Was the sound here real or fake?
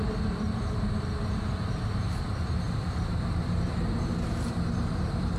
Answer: fake